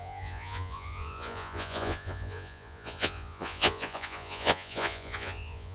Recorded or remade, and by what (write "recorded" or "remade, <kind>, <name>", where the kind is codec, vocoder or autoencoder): remade, vocoder, Vocos